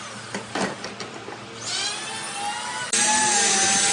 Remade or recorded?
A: recorded